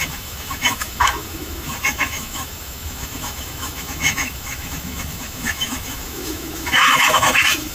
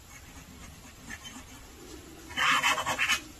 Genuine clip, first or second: second